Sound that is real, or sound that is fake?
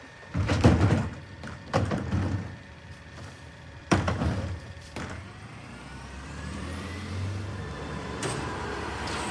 fake